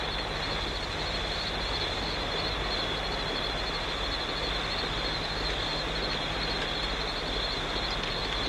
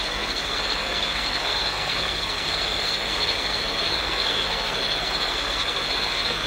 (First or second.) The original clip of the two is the first